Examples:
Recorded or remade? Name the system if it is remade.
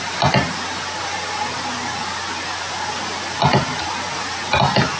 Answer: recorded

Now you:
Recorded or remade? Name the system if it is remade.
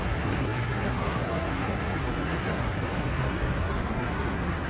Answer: remade, codec, SNAC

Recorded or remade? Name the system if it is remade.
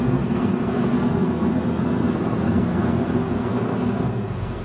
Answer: remade, codec, SNAC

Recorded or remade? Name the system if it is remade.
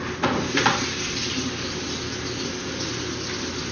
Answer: recorded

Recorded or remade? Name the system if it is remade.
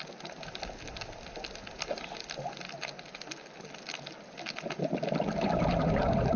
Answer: recorded